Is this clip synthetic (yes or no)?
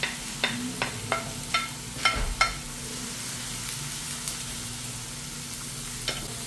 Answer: no